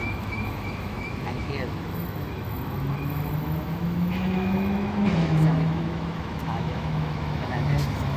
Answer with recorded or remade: remade